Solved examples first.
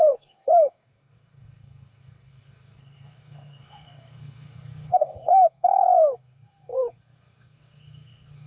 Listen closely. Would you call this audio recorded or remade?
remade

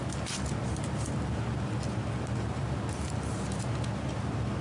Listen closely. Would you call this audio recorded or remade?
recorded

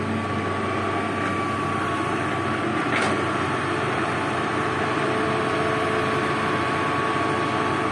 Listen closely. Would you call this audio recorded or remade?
recorded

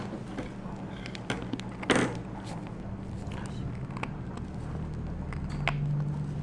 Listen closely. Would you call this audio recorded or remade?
recorded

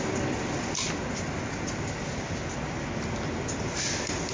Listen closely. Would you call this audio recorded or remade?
recorded